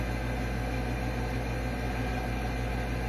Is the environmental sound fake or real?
real